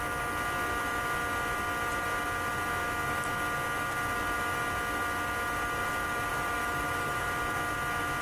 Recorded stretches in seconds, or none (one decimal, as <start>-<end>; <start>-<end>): 0.0-6.3; 7.2-8.2